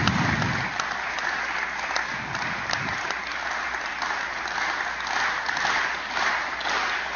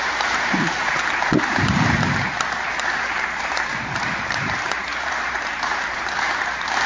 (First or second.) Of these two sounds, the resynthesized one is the second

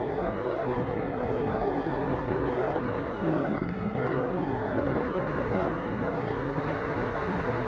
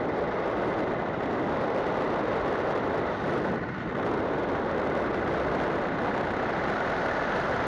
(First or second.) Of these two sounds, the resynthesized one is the first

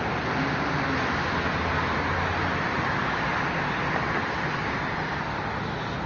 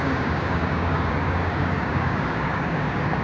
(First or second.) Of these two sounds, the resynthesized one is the second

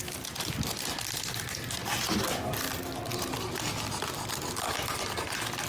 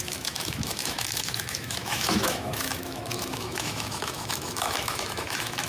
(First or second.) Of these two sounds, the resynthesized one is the second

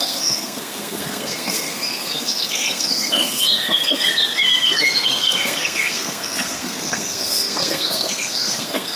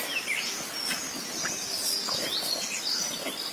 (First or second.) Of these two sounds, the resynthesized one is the first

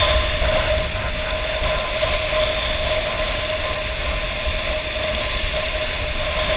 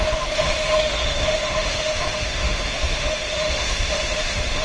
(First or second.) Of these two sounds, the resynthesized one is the second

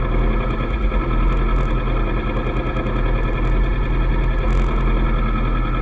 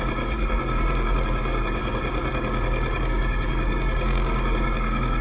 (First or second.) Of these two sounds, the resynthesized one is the second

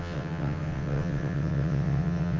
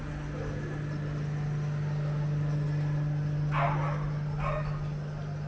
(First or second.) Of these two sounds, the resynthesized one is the first